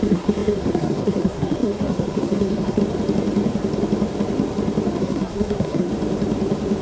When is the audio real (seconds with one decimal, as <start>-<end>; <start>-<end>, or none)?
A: 2.8-5.0; 5.9-6.8